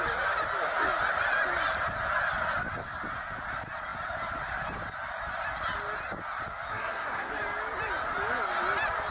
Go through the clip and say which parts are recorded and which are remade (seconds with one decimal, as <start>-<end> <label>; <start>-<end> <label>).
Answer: 0.0-6.7 recorded; 6.7-7.3 remade; 7.3-9.1 recorded